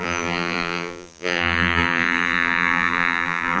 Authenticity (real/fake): fake